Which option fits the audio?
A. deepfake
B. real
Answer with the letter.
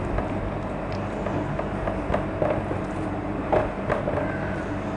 B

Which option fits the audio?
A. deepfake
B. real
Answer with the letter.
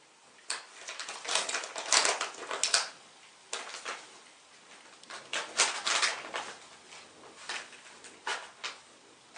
B